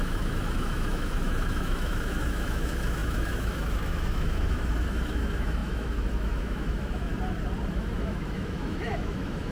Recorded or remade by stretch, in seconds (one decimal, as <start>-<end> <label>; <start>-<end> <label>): 0.0-7.1 remade; 7.1-7.7 recorded; 7.7-9.5 remade